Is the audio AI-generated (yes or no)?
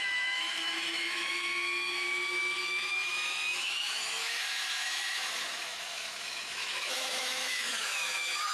yes